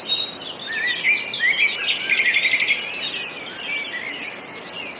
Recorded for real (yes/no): yes